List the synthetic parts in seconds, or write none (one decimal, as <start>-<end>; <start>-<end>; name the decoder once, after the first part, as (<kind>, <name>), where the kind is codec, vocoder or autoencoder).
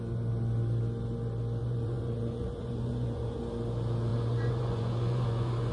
1.6-3.4 (vocoder, Vocos); 4.1-5.7